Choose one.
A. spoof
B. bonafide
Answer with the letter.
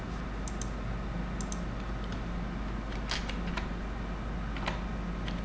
B